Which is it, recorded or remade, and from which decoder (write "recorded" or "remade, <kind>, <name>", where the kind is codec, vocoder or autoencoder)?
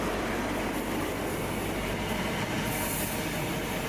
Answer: recorded